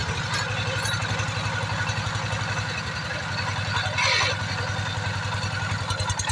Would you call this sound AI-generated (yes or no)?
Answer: no